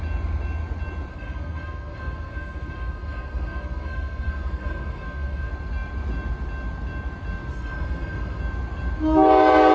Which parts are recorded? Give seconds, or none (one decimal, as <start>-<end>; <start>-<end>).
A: 0.0-1.1; 5.5-7.5; 8.4-9.7